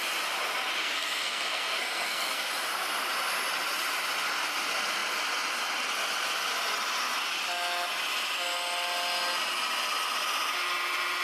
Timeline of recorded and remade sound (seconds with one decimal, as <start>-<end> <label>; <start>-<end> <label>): 0.0-0.8 recorded; 0.8-2.5 remade; 2.5-11.2 recorded